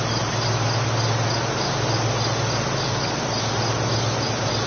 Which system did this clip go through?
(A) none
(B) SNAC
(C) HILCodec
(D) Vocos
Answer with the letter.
A